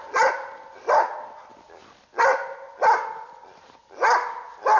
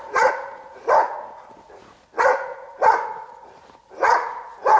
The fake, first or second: second